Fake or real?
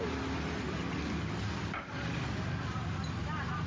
real